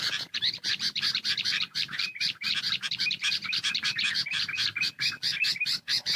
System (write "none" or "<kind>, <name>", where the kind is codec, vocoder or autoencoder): vocoder, BigVGAN v2